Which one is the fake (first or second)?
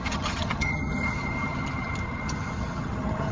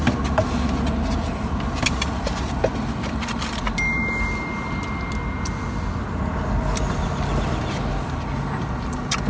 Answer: first